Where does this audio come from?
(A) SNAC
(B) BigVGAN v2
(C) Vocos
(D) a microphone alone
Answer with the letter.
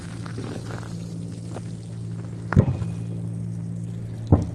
D